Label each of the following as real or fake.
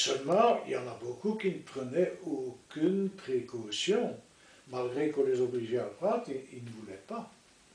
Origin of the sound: real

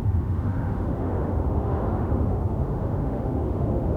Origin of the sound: fake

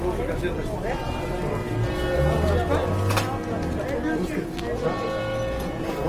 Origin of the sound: real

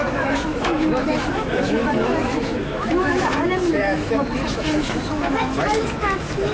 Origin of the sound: fake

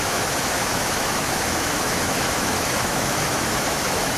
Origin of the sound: fake